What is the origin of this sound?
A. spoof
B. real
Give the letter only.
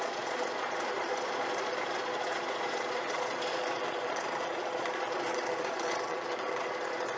A